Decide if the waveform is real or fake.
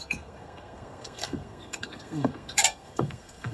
fake